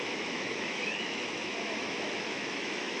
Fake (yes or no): yes